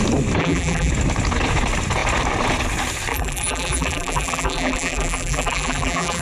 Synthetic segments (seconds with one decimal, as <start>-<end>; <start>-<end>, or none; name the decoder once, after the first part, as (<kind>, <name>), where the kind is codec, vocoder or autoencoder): 0.4-0.9 (vocoder, BigVGAN v2); 3.1-6.2